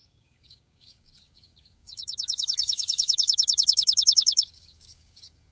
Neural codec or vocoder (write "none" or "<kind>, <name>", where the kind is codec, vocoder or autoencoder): codec, DAC